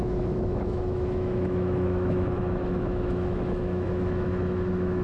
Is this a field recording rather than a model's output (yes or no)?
no